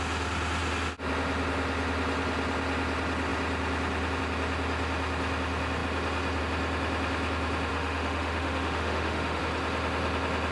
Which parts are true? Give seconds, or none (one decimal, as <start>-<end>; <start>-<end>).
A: 0.0-7.7; 9.4-10.5